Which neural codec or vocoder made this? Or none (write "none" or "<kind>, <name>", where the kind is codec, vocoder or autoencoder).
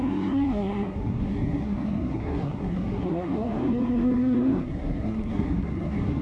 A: codec, SNAC